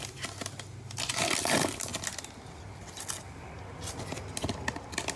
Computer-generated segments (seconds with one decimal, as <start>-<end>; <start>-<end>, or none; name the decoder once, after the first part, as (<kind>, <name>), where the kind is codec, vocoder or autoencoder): none